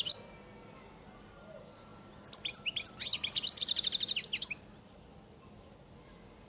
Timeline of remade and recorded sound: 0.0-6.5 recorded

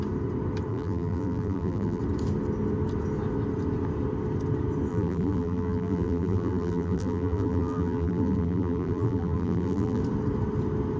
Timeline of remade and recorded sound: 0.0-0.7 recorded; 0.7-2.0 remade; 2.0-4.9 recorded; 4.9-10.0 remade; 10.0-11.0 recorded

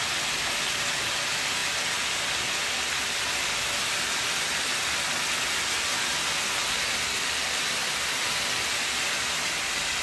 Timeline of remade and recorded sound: 0.0-10.0 recorded